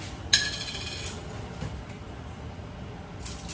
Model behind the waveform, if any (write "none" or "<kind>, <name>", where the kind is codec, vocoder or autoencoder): none